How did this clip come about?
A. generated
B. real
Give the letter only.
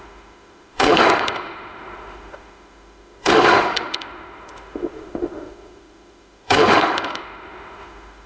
A